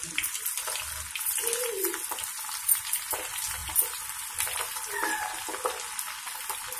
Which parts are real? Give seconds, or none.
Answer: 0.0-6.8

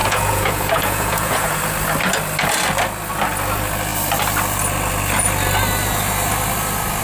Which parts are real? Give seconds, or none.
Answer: 1.5-7.0

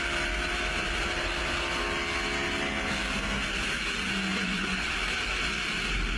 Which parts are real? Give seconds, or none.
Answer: 0.0-4.3; 4.9-6.2

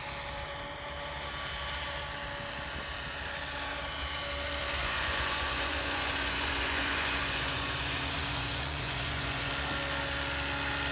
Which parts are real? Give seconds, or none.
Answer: 0.0-4.8; 9.5-10.9

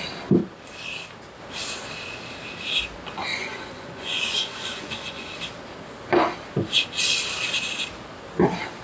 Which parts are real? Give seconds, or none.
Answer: 0.0-3.3; 5.3-8.8

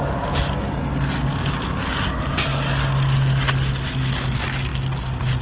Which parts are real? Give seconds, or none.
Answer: 0.0-5.4